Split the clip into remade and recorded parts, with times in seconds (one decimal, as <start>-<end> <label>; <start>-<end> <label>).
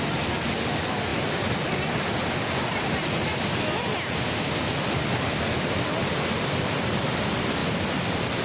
0.0-8.4 recorded